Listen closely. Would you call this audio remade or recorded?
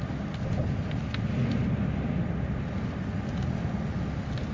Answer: recorded